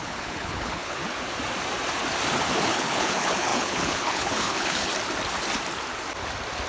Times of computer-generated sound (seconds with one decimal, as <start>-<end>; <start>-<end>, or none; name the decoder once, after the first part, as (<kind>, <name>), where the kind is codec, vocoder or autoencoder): 0.0-1.0 (codec, HILCodec); 2.5-4.9